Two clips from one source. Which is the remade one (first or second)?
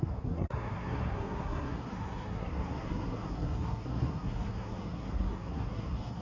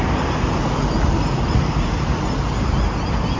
first